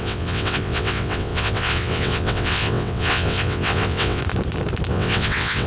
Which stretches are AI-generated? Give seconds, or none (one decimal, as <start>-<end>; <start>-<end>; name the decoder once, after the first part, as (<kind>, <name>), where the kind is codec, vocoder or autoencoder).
0.0-4.2 (vocoder, WaveNeXt); 4.9-5.7